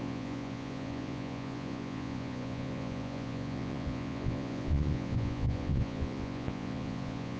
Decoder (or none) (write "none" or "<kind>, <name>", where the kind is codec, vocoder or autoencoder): vocoder, Vocos